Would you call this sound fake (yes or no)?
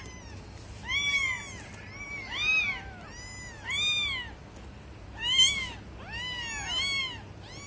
no